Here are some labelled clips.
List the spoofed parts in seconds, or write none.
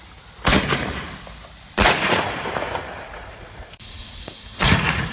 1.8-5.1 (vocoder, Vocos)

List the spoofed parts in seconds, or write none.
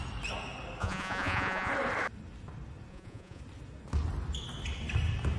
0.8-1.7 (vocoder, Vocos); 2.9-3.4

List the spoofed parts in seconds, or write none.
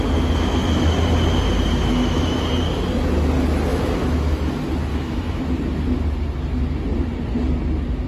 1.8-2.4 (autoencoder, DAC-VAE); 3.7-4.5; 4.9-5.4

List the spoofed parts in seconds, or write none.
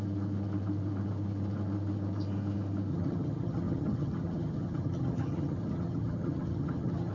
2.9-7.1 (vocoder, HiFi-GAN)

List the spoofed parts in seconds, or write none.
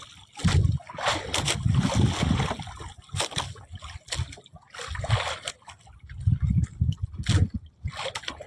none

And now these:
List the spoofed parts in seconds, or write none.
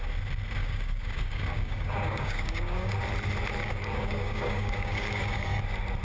0.6-3.0 (codec, DAC); 3.6-5.6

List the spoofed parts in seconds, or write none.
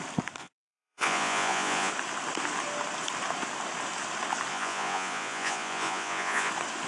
0.4-1.9 (vocoder, Vocos); 4.5-6.5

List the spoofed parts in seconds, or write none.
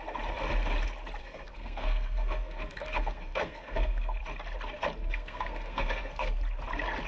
1.2-4.2 (codec, SNAC); 5.0-6.3